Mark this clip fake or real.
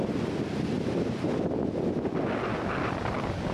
real